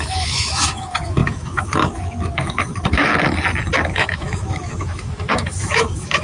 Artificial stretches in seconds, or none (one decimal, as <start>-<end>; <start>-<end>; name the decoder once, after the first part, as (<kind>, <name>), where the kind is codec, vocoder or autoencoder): 0.0-3.1 (autoencoder, DAC-VAE); 3.8-6.2